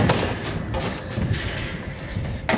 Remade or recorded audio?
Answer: recorded